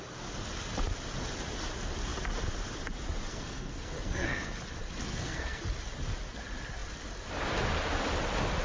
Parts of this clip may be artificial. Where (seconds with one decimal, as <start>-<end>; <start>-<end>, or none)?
3.3-4.6; 5.1-5.6